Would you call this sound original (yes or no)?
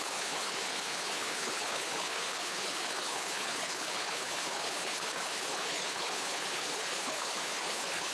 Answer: no